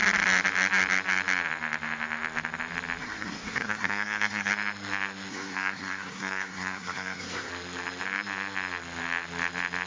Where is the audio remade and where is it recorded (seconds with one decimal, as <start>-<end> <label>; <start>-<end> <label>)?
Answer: 0.0-3.0 recorded; 3.0-4.5 remade; 4.5-5.3 recorded; 5.3-7.5 remade; 7.5-9.9 recorded